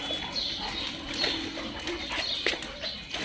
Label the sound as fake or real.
real